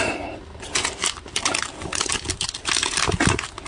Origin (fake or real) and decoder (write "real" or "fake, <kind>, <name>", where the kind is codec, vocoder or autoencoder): real